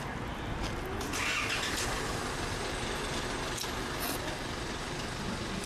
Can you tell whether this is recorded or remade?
recorded